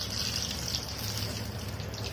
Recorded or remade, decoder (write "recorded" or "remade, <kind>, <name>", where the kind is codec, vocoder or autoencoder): recorded